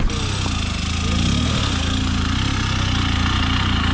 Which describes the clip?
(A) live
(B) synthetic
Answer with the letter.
A